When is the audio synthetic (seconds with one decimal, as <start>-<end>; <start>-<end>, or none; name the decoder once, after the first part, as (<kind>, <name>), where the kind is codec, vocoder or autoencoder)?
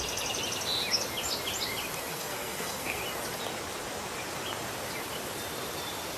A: 2.1-3.0 (codec, SNAC)